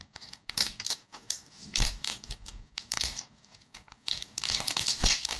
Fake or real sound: fake